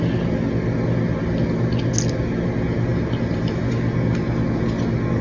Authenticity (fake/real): real